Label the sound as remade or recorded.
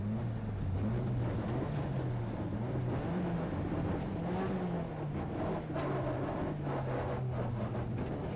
recorded